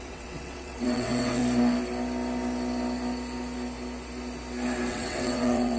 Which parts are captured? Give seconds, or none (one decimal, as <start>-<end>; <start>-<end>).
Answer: 1.4-4.9